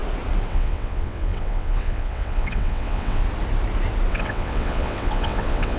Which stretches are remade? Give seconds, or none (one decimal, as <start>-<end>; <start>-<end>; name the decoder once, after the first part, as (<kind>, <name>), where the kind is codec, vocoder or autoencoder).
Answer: 0.5-3.2 (vocoder, WaveNeXt); 4.1-5.8